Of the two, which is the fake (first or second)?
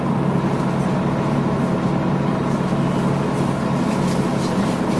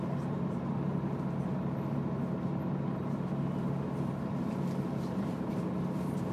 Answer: second